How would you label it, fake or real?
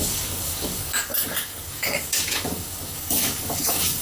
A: fake